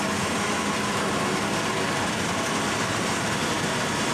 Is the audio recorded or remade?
recorded